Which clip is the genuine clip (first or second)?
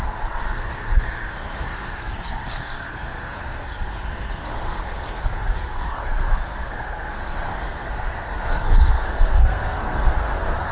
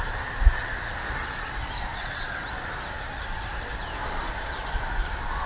second